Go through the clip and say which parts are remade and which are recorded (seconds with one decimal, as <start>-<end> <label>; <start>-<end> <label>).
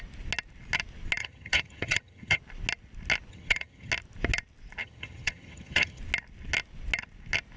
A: 0.0-1.2 recorded; 1.2-2.4 remade; 2.4-3.3 recorded; 3.3-3.9 remade; 3.9-4.8 recorded; 4.8-6.0 remade; 6.0-7.6 recorded